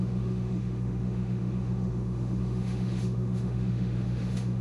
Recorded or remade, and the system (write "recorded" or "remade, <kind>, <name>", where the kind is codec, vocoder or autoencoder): remade, autoencoder, DAC-VAE